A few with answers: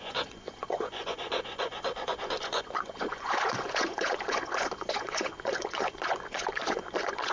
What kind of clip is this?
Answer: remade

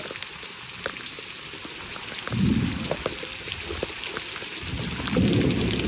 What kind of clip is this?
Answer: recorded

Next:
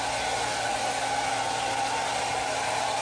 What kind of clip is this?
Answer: recorded